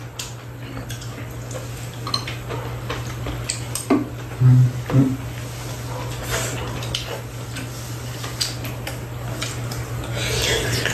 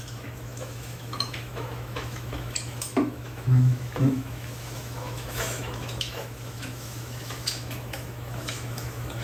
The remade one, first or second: second